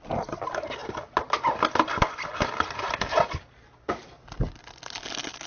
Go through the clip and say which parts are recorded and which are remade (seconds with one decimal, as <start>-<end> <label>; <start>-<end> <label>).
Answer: 0.0-5.5 recorded

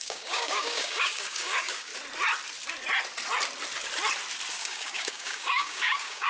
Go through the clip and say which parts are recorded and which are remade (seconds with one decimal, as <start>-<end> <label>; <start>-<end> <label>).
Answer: 0.0-1.9 remade; 1.9-4.5 recorded; 4.5-6.3 remade

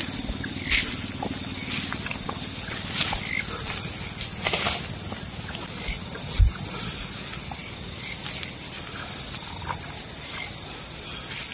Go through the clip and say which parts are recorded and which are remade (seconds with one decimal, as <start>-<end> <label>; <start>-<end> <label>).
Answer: 0.0-11.5 recorded

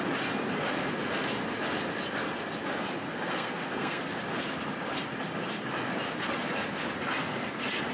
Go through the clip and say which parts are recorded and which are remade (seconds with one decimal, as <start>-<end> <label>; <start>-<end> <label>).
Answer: 0.0-3.0 recorded; 3.0-4.1 remade; 4.1-7.9 recorded

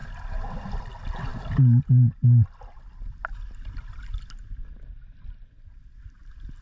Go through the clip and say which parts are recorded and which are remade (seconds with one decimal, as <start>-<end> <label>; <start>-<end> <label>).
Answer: 0.0-6.6 recorded

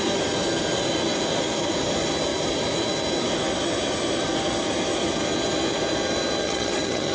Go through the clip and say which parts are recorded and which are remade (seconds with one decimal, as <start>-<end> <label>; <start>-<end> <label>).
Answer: 0.0-6.4 recorded; 6.4-7.1 remade